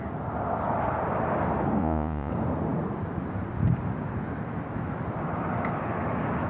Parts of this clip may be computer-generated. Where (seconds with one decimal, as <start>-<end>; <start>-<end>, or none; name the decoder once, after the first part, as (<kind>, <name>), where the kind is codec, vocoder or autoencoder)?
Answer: 1.8-2.3 (vocoder, Vocos)